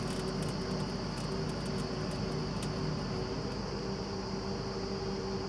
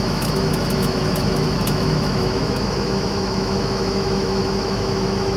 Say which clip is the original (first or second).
first